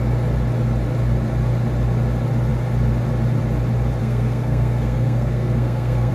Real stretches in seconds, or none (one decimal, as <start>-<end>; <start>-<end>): 0.0-4.0